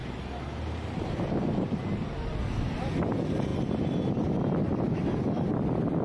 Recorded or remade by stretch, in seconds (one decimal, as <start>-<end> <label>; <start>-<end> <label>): 0.0-6.0 recorded